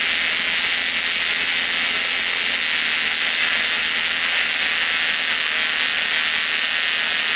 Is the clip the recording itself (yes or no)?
yes